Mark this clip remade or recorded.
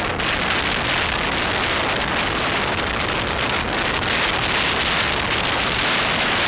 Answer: recorded